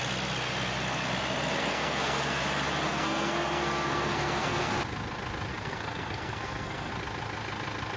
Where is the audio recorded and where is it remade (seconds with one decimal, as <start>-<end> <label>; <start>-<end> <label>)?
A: 0.0-1.6 recorded; 1.6-2.4 remade; 2.4-2.9 recorded; 2.9-4.7 remade; 4.7-5.5 recorded; 5.5-6.9 remade; 6.9-8.0 recorded